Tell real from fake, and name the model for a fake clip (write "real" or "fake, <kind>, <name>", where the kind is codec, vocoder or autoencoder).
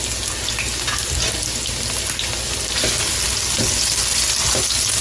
real